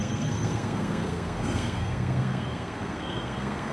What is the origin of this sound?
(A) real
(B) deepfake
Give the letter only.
B